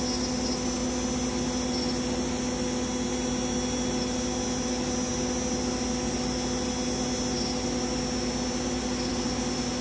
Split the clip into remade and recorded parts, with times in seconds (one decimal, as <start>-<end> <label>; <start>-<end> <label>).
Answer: 0.0-9.8 recorded